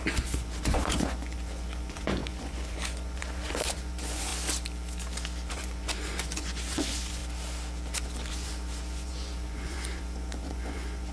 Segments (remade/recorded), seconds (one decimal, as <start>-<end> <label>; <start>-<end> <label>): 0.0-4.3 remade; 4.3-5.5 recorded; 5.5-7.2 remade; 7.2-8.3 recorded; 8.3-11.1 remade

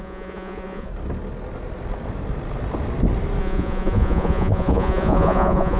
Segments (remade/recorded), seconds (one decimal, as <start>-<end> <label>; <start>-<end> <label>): 0.0-0.9 remade; 0.9-3.4 recorded; 3.4-5.8 remade

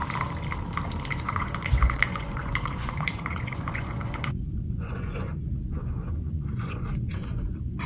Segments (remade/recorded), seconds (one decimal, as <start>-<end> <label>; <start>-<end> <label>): 0.0-1.2 recorded; 1.2-7.9 remade